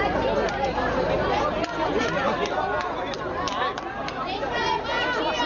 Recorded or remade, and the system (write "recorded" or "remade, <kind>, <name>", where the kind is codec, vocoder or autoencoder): recorded